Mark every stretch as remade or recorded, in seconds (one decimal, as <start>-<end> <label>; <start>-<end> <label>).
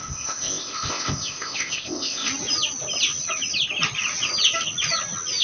0.0-2.3 remade; 2.3-5.4 recorded